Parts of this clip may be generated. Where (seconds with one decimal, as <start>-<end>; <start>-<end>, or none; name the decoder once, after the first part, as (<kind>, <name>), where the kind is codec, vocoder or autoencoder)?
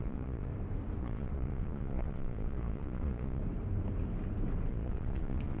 0.0-0.5 (vocoder, Vocos); 1.0-3.4; 4.7-5.6